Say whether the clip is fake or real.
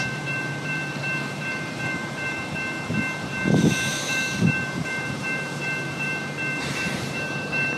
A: fake